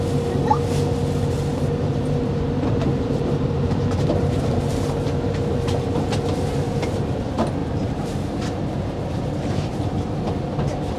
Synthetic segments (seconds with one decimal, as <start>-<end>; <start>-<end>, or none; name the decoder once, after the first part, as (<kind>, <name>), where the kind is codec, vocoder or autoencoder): 1.5-5.7 (vocoder, BigVGAN v2); 7.6-9.7